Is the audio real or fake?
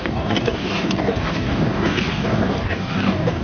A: fake